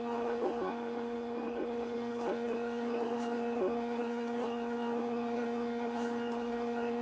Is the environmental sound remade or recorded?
remade